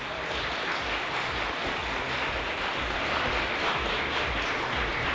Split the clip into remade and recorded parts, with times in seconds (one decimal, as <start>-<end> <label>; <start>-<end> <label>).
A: 0.0-5.1 recorded